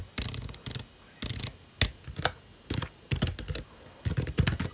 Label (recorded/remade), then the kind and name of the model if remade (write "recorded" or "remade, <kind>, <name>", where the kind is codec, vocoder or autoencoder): recorded